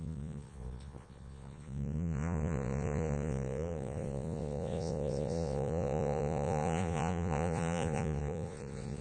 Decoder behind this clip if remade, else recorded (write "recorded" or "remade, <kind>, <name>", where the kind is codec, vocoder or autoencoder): remade, vocoder, Vocos